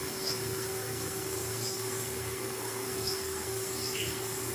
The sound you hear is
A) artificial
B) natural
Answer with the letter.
A